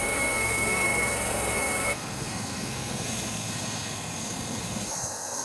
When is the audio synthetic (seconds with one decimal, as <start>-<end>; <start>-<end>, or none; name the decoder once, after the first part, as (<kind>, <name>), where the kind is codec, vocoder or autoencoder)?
0.0-5.4 (codec, SNAC)